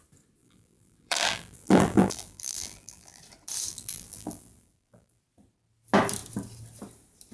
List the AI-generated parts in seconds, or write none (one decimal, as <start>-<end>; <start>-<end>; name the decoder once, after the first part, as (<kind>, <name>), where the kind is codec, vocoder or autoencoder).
0.4-3.2 (vocoder, BigVGAN v2); 3.7-5.2